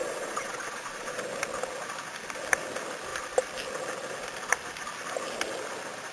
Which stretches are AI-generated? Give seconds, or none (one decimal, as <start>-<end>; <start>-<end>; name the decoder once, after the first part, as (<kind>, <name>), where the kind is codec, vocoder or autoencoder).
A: 0.0-1.2 (vocoder, Vocos)